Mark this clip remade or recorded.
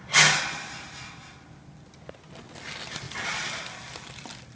recorded